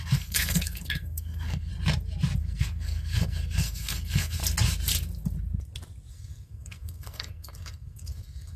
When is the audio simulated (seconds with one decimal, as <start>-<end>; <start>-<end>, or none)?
0.0-1.7; 2.4-4.4; 6.1-8.6